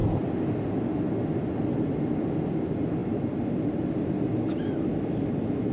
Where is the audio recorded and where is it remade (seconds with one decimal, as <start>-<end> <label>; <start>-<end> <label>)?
0.0-5.7 recorded